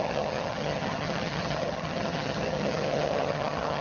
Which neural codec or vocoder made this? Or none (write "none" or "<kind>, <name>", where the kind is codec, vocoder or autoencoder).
vocoder, HiFi-GAN